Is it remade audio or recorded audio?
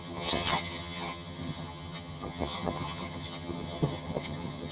remade